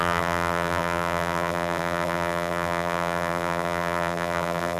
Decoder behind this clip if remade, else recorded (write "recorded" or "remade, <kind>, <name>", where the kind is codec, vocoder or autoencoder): remade, vocoder, BigVGAN v2